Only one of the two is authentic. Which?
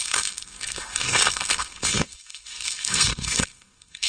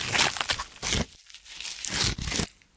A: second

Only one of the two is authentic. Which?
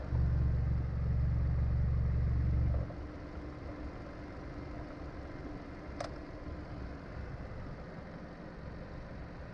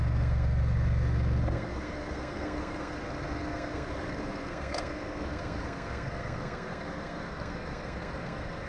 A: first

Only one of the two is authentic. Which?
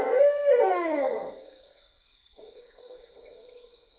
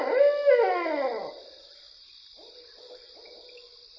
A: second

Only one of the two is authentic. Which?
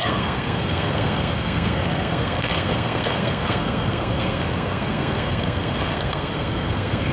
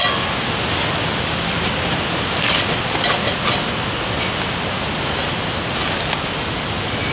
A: second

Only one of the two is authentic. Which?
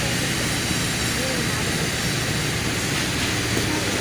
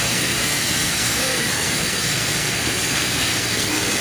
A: first